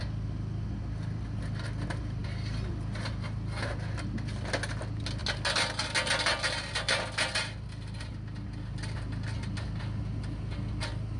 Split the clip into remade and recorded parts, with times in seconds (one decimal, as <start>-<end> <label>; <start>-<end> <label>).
0.0-11.2 recorded